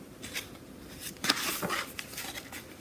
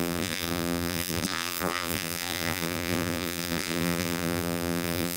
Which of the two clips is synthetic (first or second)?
second